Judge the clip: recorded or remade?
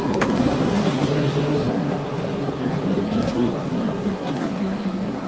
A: remade